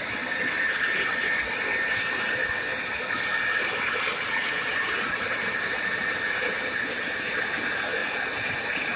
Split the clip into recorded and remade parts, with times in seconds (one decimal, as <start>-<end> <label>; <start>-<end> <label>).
0.0-2.4 remade; 2.4-4.8 recorded; 4.8-8.0 remade; 8.0-8.5 recorded; 8.5-9.0 remade